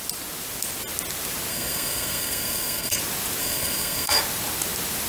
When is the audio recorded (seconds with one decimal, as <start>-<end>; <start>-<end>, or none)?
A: 0.0-1.5; 3.0-3.4; 4.2-5.1